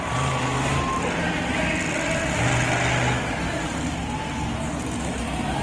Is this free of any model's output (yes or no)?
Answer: yes